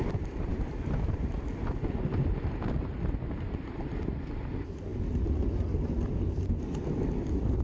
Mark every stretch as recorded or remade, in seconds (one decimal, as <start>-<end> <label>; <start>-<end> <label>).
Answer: 0.0-0.5 recorded; 0.5-4.0 remade; 4.0-7.6 recorded